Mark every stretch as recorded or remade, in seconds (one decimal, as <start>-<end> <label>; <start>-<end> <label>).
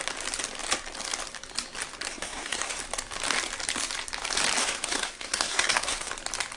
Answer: 0.0-2.1 recorded; 2.1-2.8 remade; 2.8-4.6 recorded; 4.6-6.1 remade; 6.1-6.6 recorded